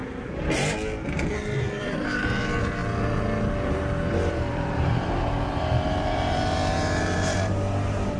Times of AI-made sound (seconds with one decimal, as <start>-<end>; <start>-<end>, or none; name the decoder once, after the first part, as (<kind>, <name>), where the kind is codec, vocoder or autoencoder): 1.6-2.8 (vocoder, BigVGAN v2); 4.3-8.2